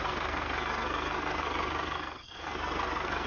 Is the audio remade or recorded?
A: remade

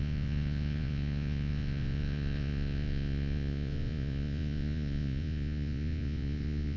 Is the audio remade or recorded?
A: remade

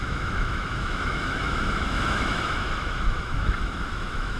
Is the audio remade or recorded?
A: remade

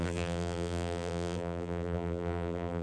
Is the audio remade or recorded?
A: remade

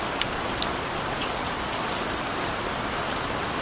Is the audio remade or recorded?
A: recorded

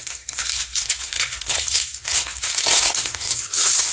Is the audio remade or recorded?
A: remade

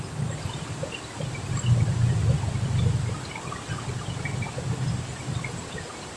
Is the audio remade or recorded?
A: recorded